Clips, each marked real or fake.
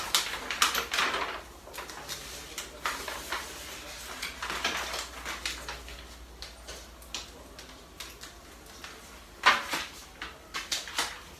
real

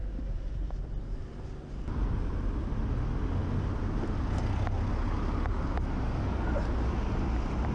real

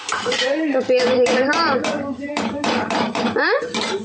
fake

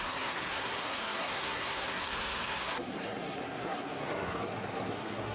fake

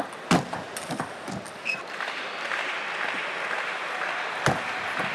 real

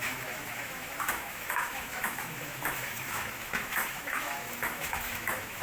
fake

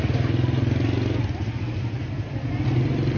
real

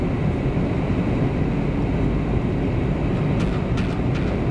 real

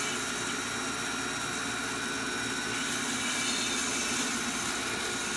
real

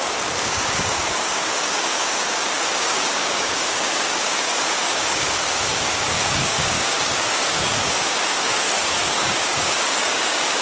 fake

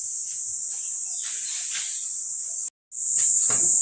real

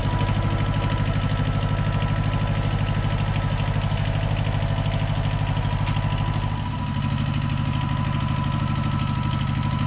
real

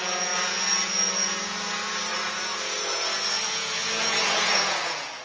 fake